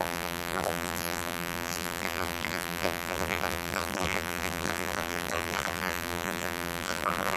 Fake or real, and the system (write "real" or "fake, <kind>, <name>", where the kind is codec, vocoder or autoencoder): fake, vocoder, BigVGAN v2